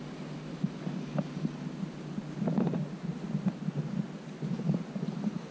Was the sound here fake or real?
real